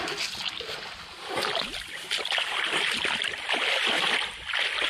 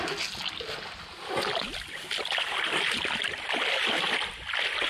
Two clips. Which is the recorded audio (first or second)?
second